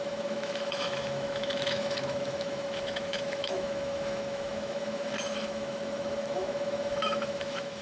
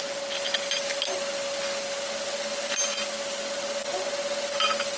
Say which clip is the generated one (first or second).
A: first